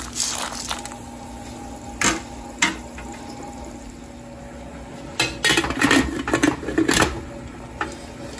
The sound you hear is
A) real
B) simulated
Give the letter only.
A